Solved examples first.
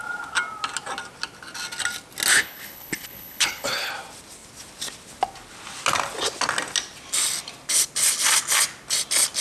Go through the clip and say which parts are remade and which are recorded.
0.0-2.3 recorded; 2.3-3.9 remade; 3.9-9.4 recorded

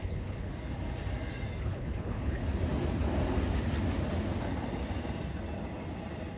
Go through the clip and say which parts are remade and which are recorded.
0.0-0.5 remade; 0.5-1.6 recorded; 1.6-2.4 remade; 2.4-6.4 recorded

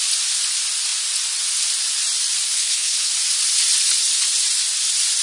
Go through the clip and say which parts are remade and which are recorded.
0.0-2.5 recorded; 2.5-3.1 remade; 3.1-5.2 recorded